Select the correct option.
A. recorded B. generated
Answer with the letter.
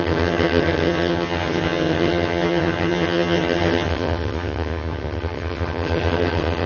B